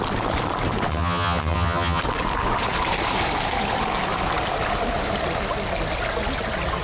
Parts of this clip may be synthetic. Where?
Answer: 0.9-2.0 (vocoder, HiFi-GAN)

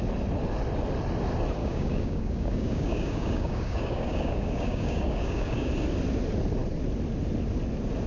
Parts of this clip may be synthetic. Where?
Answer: 1.6-5.7 (codec, DAC)